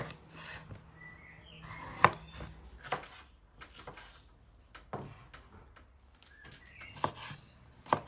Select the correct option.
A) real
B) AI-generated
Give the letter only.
A